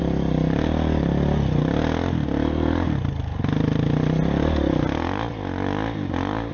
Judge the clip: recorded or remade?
recorded